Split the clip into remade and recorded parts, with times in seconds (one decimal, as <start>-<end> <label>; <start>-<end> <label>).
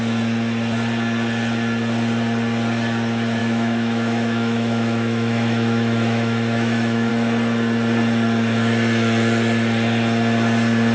0.0-3.4 recorded; 3.4-7.1 remade; 7.1-10.9 recorded